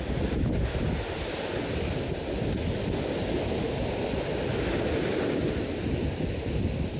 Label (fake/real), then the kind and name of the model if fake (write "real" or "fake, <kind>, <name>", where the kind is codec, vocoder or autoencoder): real